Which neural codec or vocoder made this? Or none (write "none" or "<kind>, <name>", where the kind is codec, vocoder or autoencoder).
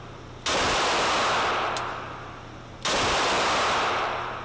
none